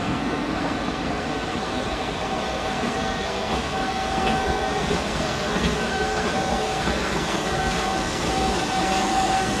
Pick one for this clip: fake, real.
fake